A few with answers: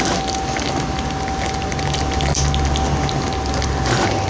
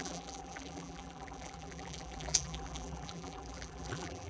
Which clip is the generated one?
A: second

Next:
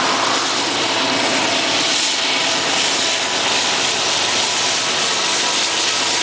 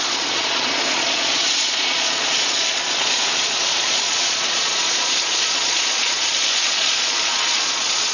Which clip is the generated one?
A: second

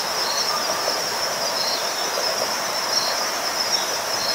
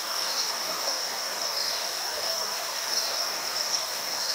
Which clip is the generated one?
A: second